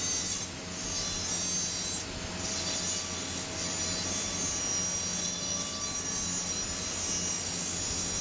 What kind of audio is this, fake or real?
real